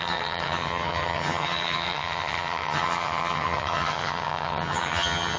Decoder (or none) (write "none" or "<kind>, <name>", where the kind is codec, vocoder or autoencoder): vocoder, HiFi-GAN